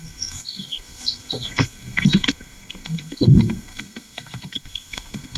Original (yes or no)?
no